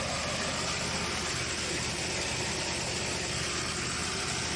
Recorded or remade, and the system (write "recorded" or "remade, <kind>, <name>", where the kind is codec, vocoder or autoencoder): recorded